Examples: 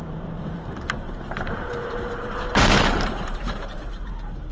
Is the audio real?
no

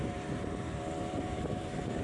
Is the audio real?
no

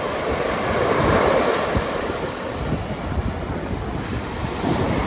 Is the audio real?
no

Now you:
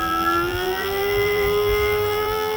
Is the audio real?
no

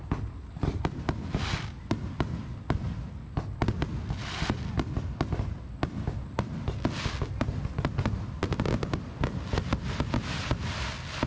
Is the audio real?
yes